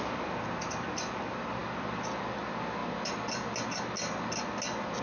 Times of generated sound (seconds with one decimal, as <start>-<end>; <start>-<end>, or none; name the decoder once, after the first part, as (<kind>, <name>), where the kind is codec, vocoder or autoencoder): none

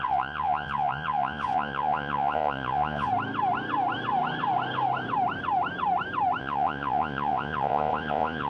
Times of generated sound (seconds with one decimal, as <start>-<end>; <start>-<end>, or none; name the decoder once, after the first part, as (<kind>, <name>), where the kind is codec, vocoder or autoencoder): 0.0-3.1 (vocoder, Vocos); 6.4-8.5

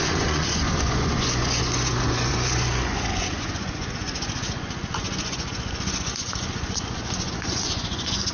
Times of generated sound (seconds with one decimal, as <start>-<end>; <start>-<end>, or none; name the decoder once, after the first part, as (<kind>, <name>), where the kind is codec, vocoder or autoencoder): 0.0-8.3 (vocoder, Vocos)

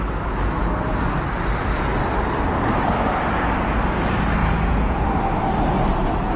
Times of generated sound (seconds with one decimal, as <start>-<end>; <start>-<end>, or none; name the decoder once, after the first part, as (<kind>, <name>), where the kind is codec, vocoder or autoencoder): 4.4-5.0 (vocoder, Vocos)

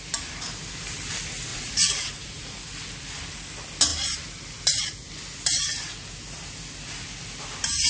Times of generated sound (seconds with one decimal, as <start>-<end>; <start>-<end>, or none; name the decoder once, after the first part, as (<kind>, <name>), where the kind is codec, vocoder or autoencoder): 1.5-2.6 (vocoder, Vocos)

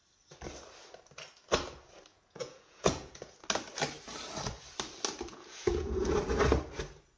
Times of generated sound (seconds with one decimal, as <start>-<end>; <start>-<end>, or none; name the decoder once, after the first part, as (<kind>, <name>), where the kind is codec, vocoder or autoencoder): 2.1-3.3 (vocoder, Vocos); 5.3-6.1

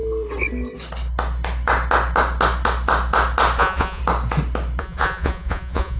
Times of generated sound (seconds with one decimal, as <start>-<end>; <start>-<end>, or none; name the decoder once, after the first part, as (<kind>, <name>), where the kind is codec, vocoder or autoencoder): 3.6-4.0 (vocoder, Vocos); 4.8-6.0

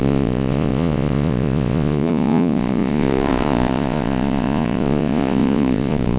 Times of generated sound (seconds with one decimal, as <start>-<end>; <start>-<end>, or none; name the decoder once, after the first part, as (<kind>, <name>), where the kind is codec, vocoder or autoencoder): 0.0-6.2 (vocoder, Vocos)